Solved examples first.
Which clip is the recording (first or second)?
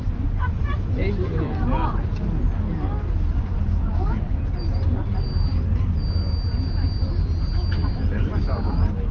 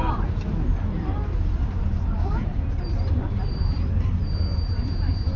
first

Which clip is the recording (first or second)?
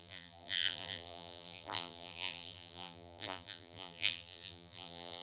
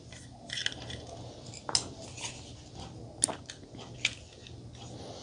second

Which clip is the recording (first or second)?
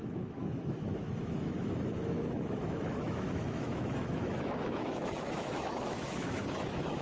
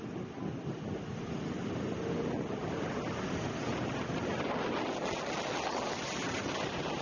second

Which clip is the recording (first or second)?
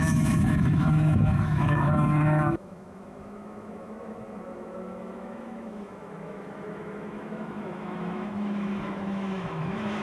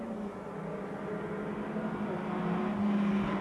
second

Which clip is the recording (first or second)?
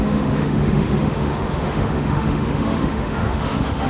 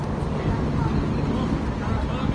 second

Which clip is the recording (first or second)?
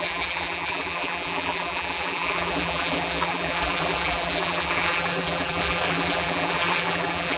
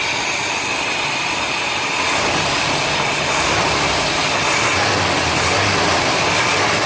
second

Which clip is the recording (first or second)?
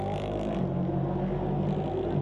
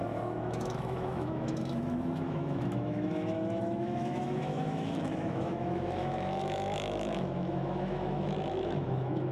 first